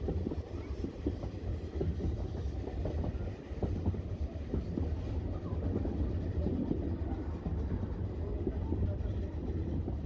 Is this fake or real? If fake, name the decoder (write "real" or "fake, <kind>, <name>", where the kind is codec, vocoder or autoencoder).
real